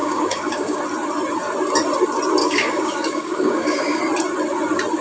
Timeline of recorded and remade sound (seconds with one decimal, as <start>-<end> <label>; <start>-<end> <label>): 0.0-0.8 remade; 0.8-2.4 recorded; 2.4-4.0 remade; 4.0-5.0 recorded